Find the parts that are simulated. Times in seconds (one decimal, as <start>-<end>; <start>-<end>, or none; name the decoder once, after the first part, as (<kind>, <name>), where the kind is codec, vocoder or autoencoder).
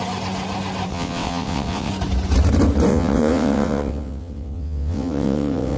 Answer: 0.9-1.9 (vocoder, WaveNeXt); 2.9-5.8